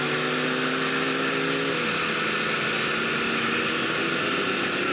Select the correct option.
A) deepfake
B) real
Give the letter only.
B